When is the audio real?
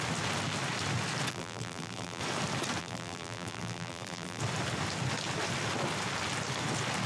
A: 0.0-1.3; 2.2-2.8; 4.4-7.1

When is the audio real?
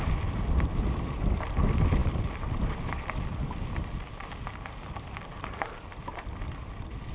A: none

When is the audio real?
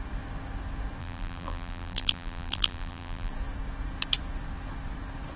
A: 0.0-1.0; 3.3-5.4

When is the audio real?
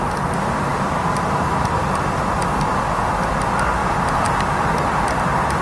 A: 0.0-3.8; 4.4-5.6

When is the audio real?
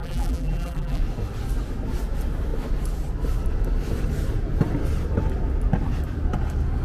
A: 1.0-6.8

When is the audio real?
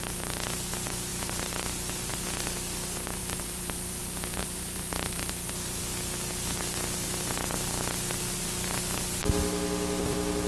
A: 0.0-3.2; 4.0-4.4; 5.8-10.5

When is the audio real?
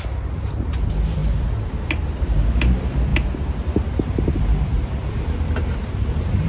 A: 0.0-6.5